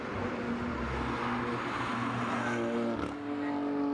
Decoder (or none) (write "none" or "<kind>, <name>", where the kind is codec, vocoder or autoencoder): none